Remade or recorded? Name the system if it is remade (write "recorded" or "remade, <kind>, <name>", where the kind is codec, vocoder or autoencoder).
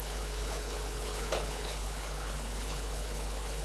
remade, codec, HILCodec